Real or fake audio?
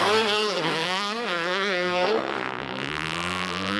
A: fake